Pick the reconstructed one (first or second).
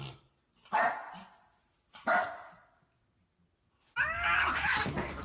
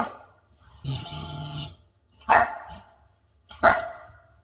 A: second